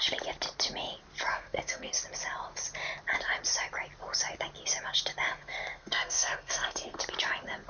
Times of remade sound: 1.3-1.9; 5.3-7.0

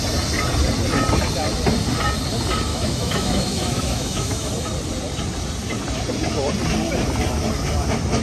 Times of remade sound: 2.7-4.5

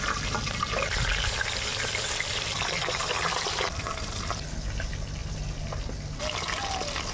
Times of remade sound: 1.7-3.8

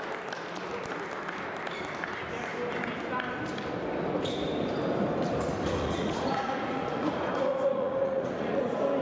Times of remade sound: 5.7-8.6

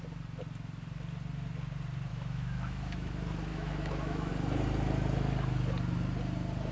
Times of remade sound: 2.1-3.1; 3.5-4.3